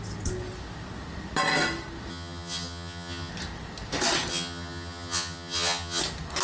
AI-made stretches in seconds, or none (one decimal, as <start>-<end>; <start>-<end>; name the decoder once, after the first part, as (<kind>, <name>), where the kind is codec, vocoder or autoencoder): 2.1-3.3 (vocoder, HiFi-GAN); 4.3-6.0